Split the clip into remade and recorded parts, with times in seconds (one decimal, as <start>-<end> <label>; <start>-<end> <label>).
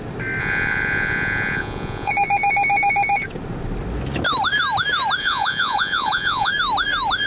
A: 0.0-0.4 recorded; 0.4-2.1 remade; 2.1-5.2 recorded; 5.2-6.5 remade; 6.5-7.3 recorded